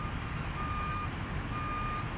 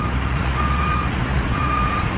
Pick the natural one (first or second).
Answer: first